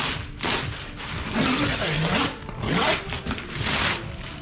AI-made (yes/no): no